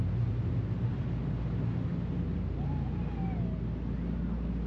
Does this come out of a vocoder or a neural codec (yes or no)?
no